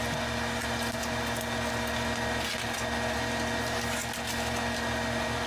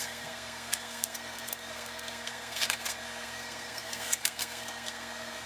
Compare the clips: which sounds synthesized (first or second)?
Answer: second